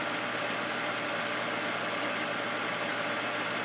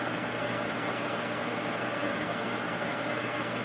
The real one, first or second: first